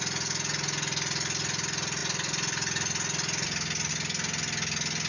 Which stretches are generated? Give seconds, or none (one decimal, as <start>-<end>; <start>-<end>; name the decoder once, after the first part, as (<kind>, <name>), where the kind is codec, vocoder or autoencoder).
none